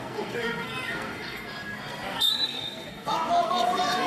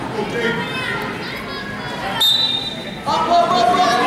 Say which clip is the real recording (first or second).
second